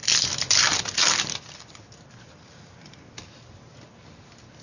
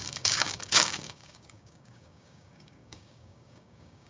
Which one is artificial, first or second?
second